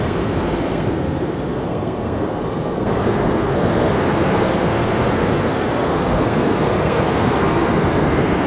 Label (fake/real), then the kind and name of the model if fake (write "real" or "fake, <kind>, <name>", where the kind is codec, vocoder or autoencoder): fake, codec, SNAC